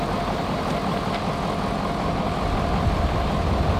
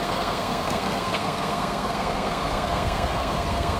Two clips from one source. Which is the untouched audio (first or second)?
first